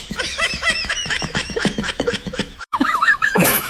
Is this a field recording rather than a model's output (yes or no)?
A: no